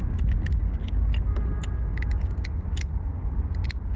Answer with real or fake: real